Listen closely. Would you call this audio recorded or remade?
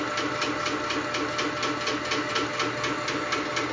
recorded